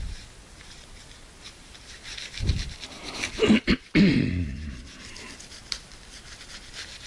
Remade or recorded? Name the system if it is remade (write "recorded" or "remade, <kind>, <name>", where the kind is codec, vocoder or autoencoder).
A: remade, vocoder, BigVGAN v2